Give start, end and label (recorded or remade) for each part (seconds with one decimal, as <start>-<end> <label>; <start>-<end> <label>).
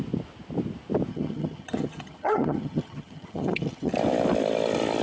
0.0-1.1 recorded; 1.1-3.9 remade; 3.9-5.0 recorded